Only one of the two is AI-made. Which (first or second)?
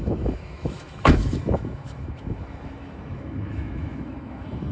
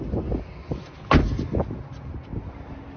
first